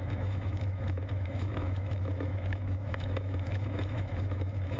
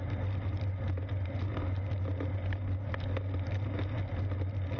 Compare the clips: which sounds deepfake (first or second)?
first